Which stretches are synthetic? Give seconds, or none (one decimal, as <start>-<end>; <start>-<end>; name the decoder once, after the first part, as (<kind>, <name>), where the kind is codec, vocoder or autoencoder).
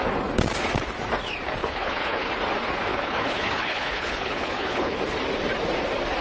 1.6-2.3 (codec, HILCodec); 2.9-5.0